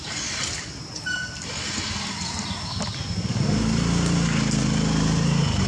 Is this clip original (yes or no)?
yes